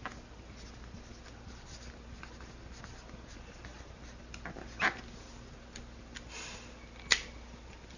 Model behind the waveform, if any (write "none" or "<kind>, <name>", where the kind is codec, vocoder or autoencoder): none